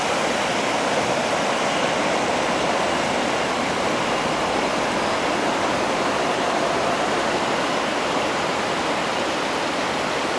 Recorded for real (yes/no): yes